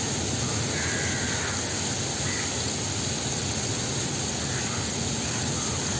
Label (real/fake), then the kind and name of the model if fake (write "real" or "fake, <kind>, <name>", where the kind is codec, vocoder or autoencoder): real